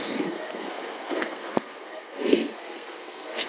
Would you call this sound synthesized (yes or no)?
yes